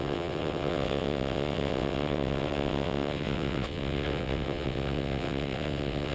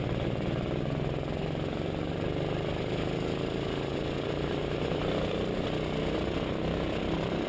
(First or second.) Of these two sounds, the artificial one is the first